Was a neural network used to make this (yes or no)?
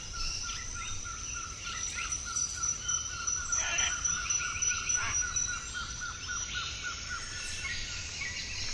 no